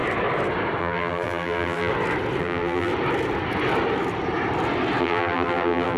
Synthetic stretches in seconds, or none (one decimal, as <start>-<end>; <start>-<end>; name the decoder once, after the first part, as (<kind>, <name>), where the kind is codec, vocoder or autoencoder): 0.8-1.9 (vocoder, BigVGAN v2); 2.4-2.9; 5.0-6.0